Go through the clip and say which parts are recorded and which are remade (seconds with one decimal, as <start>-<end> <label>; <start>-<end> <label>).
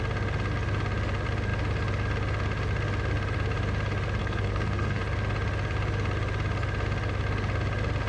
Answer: 0.0-4.2 recorded; 4.2-5.0 remade; 5.0-8.1 recorded